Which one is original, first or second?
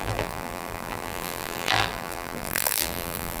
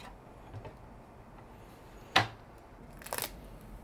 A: second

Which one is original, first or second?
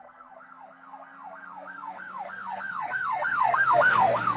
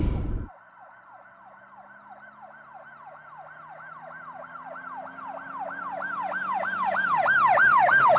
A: second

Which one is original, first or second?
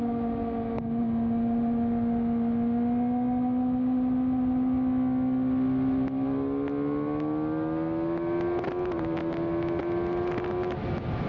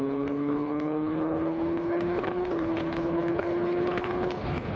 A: first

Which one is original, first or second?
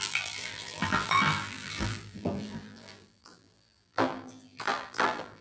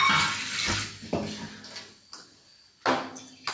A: second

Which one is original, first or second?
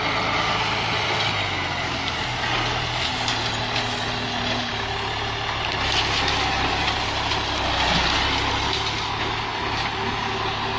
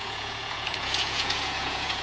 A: first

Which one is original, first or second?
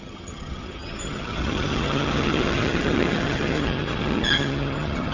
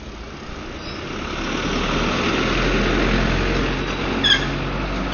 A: second